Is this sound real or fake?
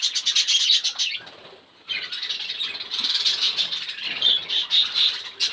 real